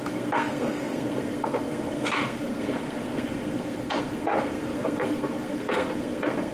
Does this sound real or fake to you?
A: fake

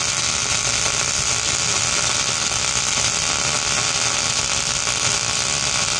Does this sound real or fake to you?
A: real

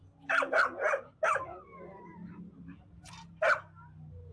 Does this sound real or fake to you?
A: real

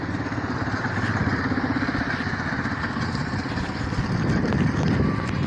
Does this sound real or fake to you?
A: real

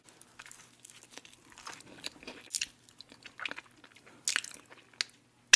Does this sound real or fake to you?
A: real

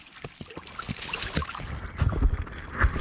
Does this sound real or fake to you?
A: real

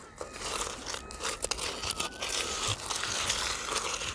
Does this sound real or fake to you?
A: real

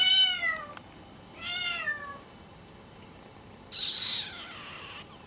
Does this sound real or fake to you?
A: real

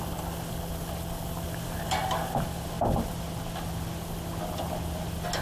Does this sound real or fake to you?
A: real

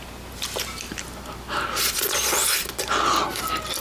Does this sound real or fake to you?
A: real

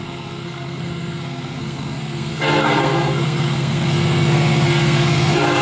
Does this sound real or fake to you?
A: fake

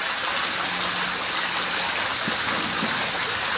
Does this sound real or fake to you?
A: real